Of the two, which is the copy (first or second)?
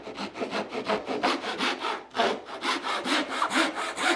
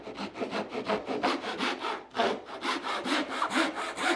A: second